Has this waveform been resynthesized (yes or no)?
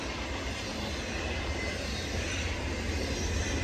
no